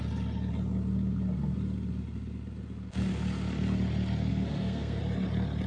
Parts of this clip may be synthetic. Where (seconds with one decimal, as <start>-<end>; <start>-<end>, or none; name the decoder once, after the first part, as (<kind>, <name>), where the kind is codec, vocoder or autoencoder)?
4.3-5.0 (codec, SNAC)